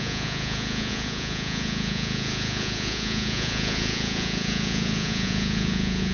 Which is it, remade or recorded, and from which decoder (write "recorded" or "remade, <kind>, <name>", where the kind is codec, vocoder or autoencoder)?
remade, vocoder, Vocos